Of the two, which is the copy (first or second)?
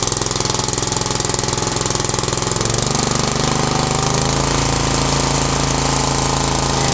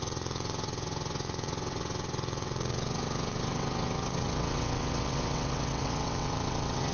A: second